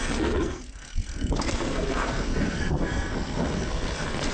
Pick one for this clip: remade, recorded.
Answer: remade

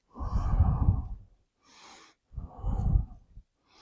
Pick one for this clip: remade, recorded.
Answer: recorded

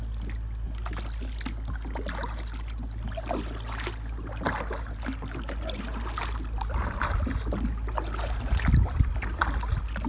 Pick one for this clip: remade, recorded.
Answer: recorded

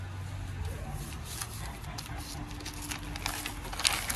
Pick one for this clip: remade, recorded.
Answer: recorded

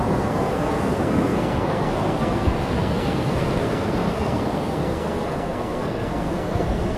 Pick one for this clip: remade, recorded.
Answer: remade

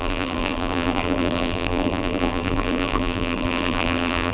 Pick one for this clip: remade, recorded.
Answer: remade